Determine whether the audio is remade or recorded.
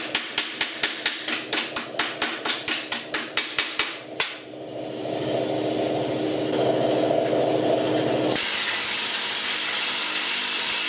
recorded